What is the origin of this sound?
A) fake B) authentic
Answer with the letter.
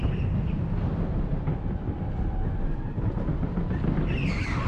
B